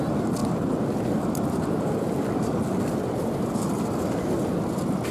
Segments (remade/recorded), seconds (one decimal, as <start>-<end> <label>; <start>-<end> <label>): 0.0-5.1 recorded